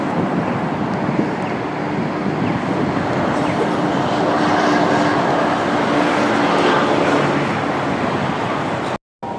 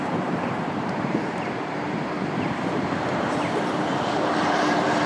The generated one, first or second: second